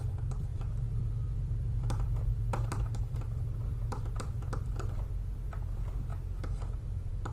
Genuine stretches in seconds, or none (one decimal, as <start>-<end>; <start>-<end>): 6.1-6.7